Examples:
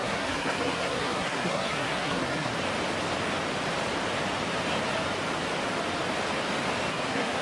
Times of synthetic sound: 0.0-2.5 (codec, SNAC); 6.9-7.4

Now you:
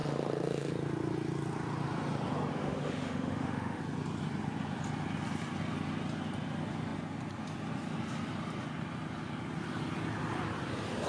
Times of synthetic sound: 0.0-0.7 (autoencoder, DAC-VAE); 2.5-3.8

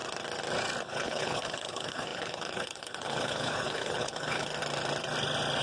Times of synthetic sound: 0.8-4.5 (codec, HILCodec)

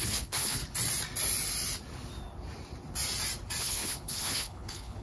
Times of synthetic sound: 0.0-0.6 (codec, HILCodec); 3.6-5.0

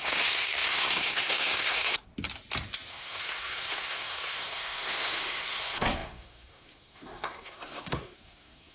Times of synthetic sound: 0.0-2.1 (codec, SNAC); 2.9-8.7

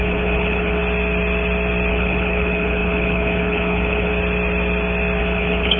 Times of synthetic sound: 0.0-0.8 (codec, HILCodec); 1.9-4.1; 5.2-5.8

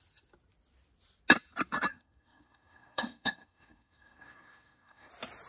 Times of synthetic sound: 1.9-5.1 (codec, SNAC)

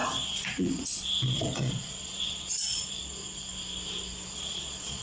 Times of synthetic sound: 0.0-3.5 (vocoder, Vocos); 4.3-5.0